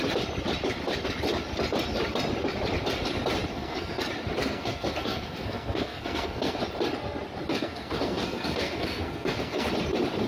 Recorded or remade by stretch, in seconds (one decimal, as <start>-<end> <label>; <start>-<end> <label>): 0.0-3.5 recorded; 3.5-4.0 remade; 4.0-4.4 recorded; 4.4-6.6 remade; 6.6-7.5 recorded; 7.5-9.7 remade; 9.7-10.3 recorded